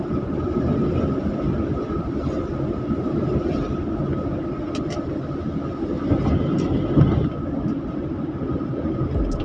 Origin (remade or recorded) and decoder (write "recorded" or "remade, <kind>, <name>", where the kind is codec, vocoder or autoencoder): recorded